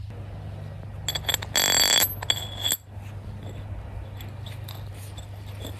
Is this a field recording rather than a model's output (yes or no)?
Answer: yes